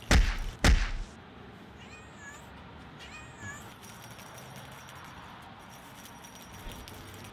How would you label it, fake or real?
real